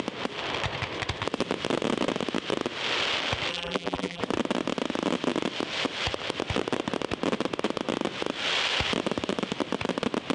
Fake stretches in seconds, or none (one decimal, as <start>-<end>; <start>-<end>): 3.5-4.2